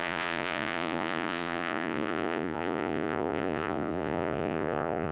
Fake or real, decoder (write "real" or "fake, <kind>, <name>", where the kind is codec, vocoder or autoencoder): fake, vocoder, Vocos